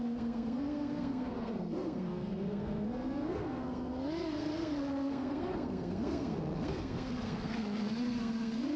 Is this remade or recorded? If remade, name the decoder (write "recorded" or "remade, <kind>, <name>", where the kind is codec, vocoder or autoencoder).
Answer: remade, codec, SNAC